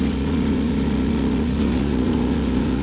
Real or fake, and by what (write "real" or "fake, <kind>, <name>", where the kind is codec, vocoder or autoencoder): fake, vocoder, Vocos